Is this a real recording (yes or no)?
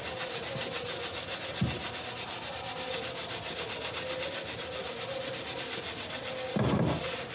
yes